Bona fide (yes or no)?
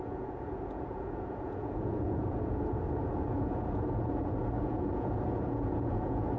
no